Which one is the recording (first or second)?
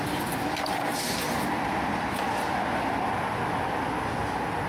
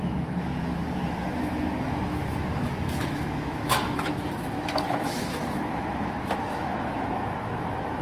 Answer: first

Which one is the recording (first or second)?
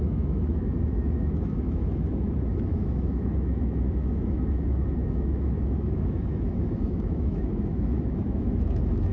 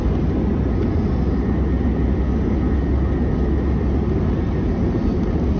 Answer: second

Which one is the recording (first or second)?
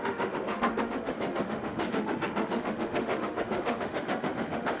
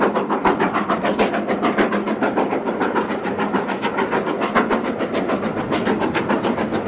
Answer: second